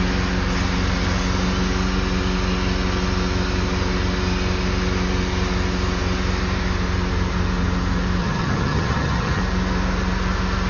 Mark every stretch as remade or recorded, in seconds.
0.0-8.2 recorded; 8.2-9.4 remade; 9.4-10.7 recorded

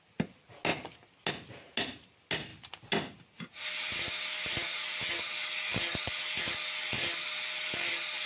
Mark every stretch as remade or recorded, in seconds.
0.0-8.3 recorded